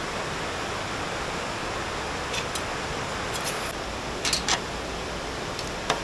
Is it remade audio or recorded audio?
recorded